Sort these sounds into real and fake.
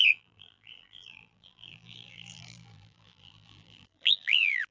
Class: fake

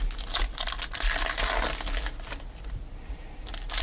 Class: real